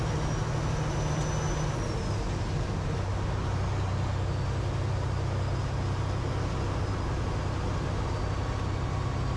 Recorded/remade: recorded